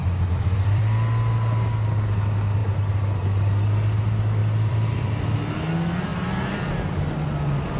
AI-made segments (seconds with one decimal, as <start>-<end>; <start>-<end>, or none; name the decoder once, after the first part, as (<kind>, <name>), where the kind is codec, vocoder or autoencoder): 0.0-0.8 (vocoder, BigVGAN v2); 4.4-5.5; 6.1-7.0

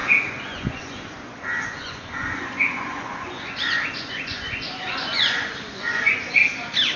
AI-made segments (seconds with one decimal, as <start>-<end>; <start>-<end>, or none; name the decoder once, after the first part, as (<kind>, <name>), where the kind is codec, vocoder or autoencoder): 0.0-6.4 (vocoder, Vocos)

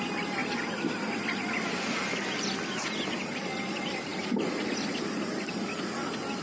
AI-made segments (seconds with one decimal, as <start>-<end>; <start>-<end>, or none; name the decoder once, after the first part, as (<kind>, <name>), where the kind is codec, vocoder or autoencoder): none

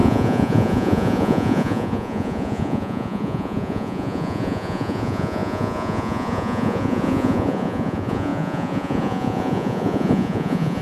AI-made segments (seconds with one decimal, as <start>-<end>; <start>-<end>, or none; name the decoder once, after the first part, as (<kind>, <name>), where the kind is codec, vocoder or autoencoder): 0.0-10.8 (vocoder, Vocos)

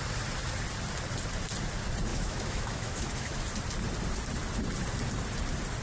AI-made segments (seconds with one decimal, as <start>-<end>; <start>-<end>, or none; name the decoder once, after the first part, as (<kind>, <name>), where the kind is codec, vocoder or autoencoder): 2.1-3.4 (autoencoder, DAC-VAE)

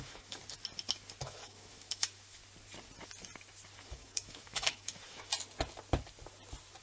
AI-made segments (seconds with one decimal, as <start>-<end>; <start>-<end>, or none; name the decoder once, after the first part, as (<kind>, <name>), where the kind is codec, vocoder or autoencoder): 0.0-0.4 (autoencoder, DAC-VAE); 1.2-2.4; 3.8-5.3

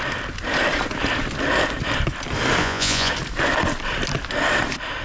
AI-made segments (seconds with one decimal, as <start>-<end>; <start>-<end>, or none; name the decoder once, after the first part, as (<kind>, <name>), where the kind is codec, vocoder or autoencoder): 2.6-3.1 (vocoder, Vocos)

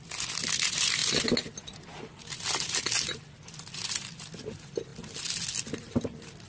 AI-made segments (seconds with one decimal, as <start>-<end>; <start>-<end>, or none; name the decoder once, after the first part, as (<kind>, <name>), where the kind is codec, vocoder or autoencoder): none